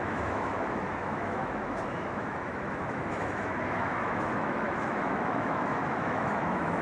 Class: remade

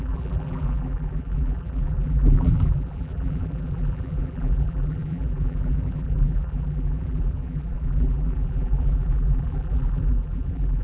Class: remade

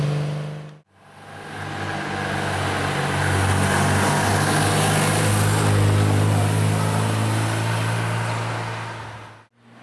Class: recorded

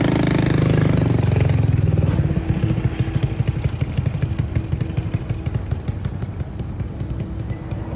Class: recorded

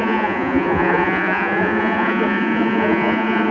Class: remade